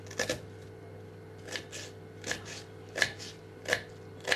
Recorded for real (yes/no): yes